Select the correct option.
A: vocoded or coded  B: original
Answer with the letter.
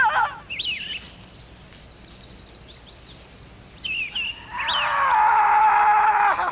B